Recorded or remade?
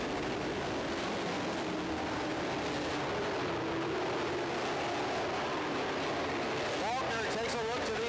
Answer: recorded